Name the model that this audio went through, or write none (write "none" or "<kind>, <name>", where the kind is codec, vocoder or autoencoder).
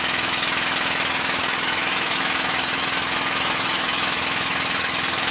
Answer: autoencoder, DAC-VAE